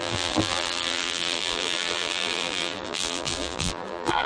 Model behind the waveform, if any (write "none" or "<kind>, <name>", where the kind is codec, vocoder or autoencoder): vocoder, BigVGAN v2